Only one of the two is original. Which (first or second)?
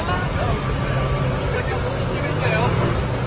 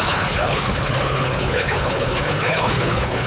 first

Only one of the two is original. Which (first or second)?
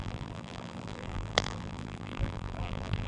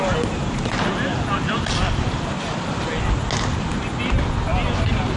second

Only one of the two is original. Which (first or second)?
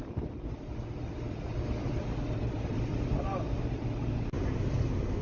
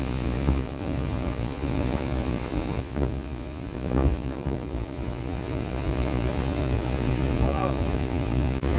first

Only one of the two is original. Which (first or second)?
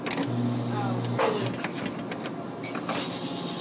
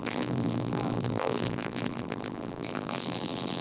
first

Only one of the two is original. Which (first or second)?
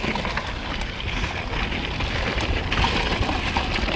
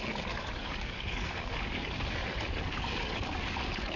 first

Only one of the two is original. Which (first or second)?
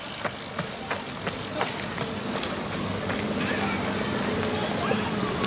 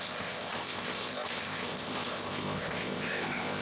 first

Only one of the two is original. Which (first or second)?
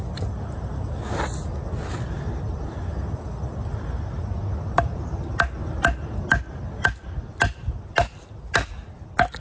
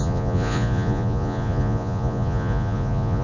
first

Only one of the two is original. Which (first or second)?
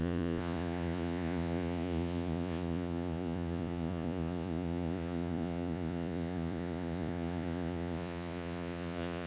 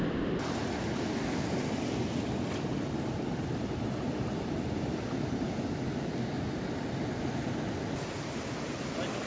second